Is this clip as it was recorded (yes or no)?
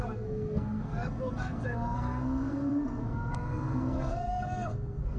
no